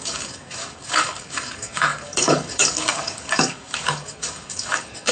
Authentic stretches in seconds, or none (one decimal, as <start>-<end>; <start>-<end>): none